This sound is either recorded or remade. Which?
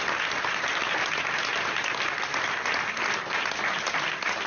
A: recorded